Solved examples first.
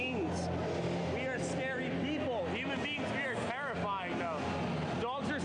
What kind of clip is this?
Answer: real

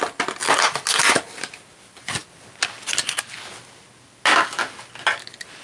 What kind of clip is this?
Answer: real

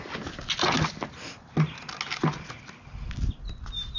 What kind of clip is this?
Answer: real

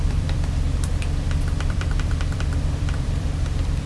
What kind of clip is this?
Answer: fake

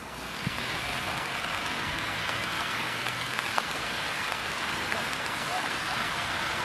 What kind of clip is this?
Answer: fake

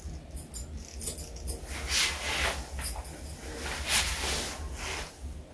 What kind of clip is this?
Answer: real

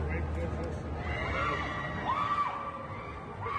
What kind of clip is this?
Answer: real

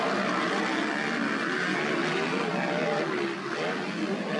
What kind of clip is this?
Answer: real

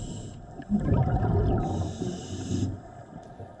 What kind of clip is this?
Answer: real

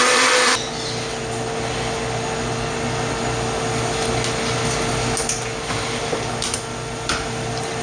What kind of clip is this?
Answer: real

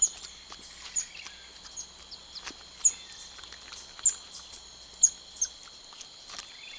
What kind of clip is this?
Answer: real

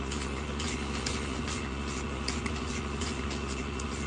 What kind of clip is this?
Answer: fake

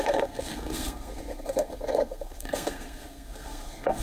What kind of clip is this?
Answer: fake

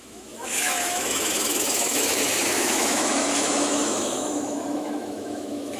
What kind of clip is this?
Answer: fake